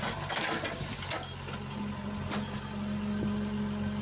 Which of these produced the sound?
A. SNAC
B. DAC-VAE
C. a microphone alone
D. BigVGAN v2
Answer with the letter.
C